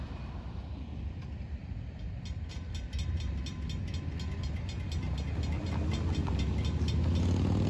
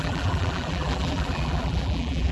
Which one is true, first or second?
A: first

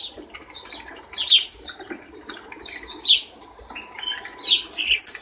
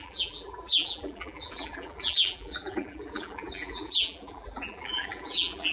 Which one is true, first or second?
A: first